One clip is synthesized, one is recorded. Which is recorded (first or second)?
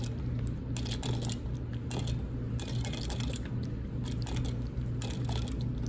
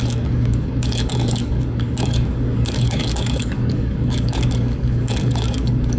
first